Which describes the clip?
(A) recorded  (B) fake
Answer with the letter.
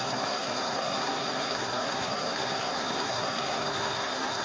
B